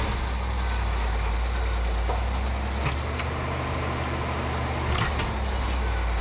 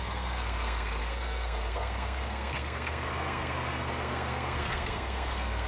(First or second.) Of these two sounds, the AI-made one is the second